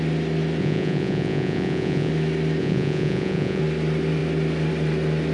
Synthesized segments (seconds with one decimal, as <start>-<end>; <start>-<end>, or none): 0.6-2.1; 2.6-3.6